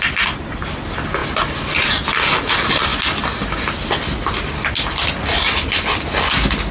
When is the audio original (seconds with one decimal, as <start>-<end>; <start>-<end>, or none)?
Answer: 0.0-6.7